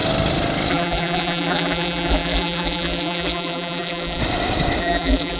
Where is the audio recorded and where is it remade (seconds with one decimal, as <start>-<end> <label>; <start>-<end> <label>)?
0.0-0.7 recorded; 0.7-4.2 remade; 4.2-4.8 recorded; 4.8-5.4 remade